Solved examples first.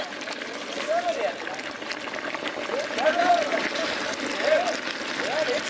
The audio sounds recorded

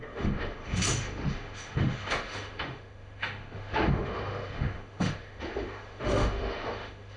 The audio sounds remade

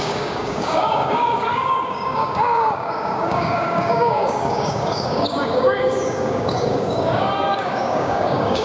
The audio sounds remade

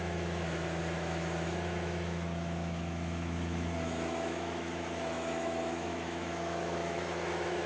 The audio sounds remade